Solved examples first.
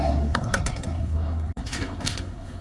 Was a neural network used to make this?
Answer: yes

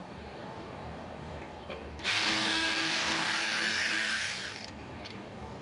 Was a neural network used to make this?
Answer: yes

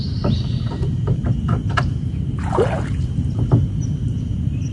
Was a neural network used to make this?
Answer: yes